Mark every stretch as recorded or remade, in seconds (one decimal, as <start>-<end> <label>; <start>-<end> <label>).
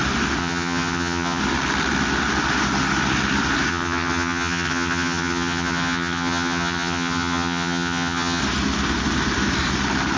0.0-0.4 recorded; 0.4-1.4 remade; 1.4-3.7 recorded; 3.7-8.4 remade; 8.4-10.2 recorded